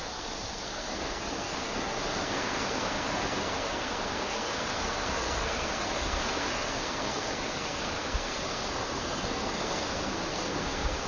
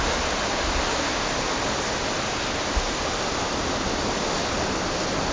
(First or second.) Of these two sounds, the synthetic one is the first